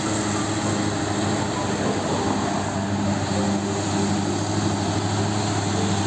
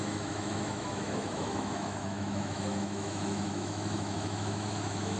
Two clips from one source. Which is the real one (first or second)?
first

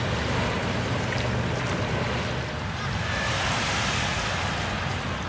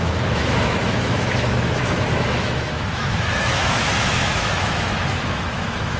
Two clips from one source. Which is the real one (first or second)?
first